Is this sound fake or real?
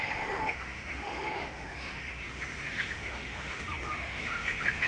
fake